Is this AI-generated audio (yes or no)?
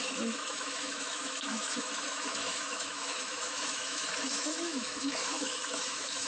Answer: yes